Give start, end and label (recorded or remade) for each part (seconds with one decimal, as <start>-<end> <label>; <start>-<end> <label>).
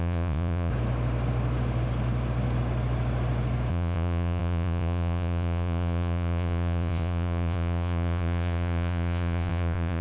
0.0-0.7 remade; 0.7-3.7 recorded; 3.7-10.0 remade